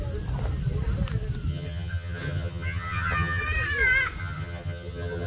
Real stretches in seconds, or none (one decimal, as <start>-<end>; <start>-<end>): 0.0-1.5; 3.4-4.2